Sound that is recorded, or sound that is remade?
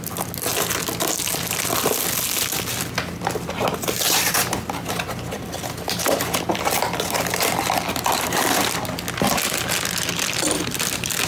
recorded